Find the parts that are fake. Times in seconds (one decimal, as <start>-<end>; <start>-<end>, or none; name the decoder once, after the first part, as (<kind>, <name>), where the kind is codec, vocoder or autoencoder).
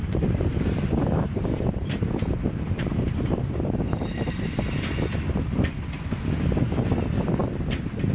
0.0-4.6 (vocoder, BigVGAN v2)